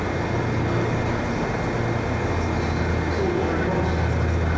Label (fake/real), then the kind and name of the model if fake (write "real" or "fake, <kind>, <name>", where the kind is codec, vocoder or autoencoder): real